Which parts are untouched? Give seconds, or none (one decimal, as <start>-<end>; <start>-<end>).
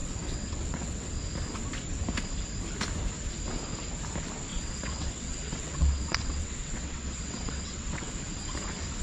1.1-4.5; 8.1-9.0